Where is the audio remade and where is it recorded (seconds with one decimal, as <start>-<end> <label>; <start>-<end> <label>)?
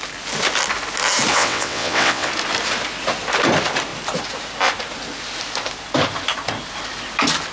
0.0-1.3 recorded; 1.3-2.3 remade; 2.3-7.5 recorded